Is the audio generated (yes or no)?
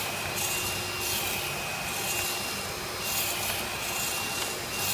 no